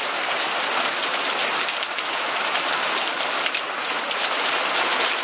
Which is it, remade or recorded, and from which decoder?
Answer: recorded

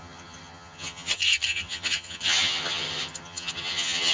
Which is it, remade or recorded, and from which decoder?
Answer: remade, vocoder, HiFi-GAN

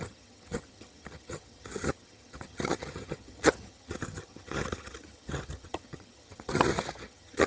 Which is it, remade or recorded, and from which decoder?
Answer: remade, vocoder, HiFi-GAN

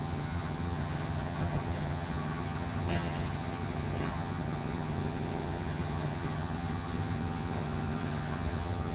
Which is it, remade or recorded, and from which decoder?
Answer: remade, vocoder, HiFi-GAN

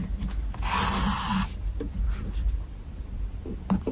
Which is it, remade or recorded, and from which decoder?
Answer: recorded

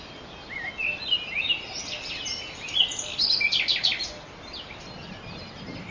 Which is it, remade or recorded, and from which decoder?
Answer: recorded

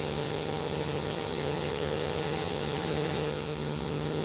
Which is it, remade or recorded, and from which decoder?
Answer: remade, vocoder, HiFi-GAN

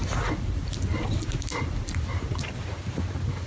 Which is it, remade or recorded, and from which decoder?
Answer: recorded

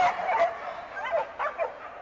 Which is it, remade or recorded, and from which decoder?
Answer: recorded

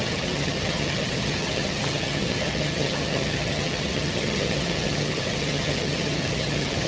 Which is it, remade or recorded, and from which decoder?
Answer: remade, vocoder, HiFi-GAN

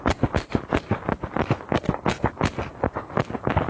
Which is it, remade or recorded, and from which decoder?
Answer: recorded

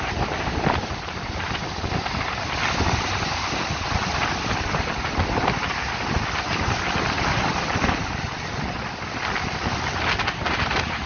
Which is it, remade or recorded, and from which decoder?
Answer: recorded